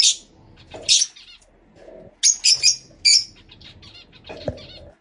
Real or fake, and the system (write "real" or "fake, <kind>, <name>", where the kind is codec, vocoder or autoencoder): real